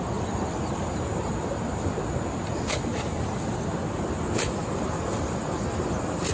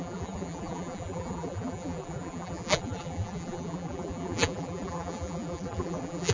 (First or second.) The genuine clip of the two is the first